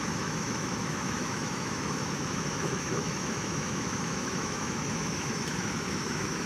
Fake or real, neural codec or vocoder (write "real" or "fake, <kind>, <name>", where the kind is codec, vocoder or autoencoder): fake, autoencoder, DAC-VAE